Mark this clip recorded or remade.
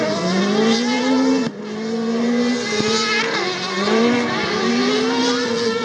recorded